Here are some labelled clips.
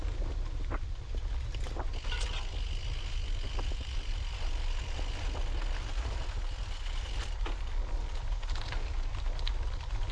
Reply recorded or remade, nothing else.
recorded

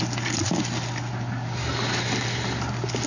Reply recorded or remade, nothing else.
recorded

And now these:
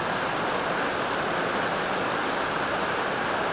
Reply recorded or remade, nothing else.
recorded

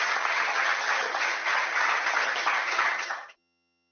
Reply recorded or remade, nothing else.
remade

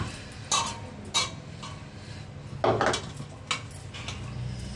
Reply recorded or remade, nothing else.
recorded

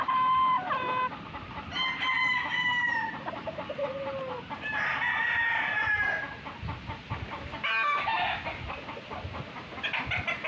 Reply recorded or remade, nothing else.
recorded